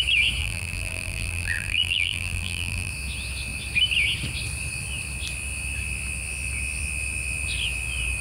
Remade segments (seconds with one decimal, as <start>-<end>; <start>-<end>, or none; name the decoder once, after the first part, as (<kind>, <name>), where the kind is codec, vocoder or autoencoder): 0.4-2.9 (vocoder, BigVGAN v2)